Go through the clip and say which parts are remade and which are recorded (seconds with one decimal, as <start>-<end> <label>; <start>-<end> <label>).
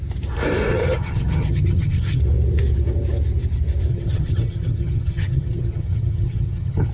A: 0.0-0.7 recorded; 0.7-2.2 remade; 2.2-3.9 recorded; 3.9-6.9 remade